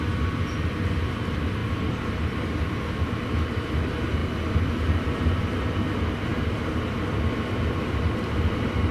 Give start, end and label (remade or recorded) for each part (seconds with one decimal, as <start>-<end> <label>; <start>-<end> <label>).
0.0-8.9 recorded